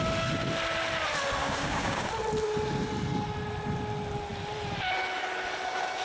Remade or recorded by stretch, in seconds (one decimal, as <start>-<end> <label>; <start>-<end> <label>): 0.0-1.4 recorded; 1.4-2.1 remade; 2.1-6.0 recorded